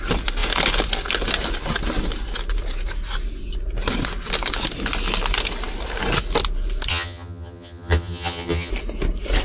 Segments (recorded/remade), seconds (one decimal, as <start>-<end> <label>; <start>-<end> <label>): 0.0-6.9 recorded; 6.9-8.7 remade; 8.7-9.4 recorded